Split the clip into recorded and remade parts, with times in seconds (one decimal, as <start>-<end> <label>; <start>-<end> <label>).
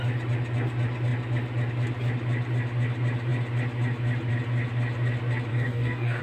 0.0-5.5 recorded; 5.5-6.2 remade